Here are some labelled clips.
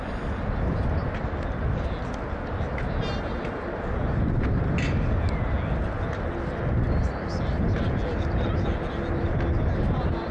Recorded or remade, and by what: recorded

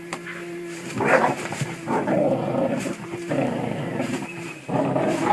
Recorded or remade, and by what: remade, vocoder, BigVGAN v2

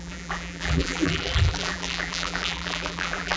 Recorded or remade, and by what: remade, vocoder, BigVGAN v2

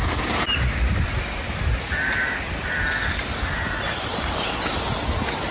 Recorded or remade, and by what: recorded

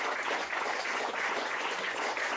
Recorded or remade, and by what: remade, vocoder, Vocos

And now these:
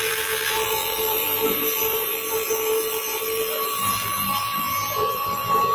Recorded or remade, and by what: remade, vocoder, BigVGAN v2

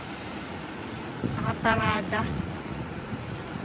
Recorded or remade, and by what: remade, vocoder, Vocos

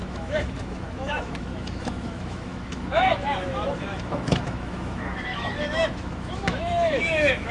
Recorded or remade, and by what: remade, autoencoder, DAC-VAE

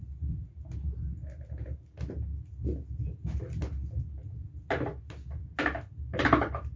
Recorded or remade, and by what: recorded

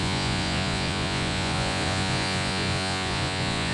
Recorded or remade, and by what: remade, vocoder, Vocos